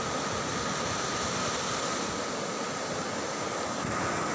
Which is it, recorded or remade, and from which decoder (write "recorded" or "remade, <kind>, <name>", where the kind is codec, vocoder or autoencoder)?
recorded